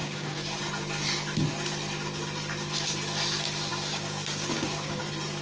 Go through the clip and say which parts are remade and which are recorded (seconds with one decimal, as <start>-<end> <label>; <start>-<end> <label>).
0.0-0.6 remade; 0.6-3.7 recorded; 3.7-5.0 remade; 5.0-5.4 recorded